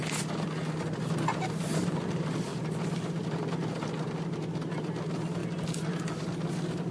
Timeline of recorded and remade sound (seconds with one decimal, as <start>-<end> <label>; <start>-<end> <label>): 0.0-6.9 recorded